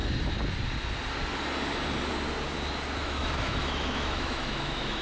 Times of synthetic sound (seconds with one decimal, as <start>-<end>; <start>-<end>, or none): 3.0-5.0

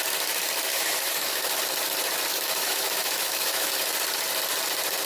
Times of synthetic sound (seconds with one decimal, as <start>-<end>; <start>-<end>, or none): 0.7-1.6; 2.3-3.7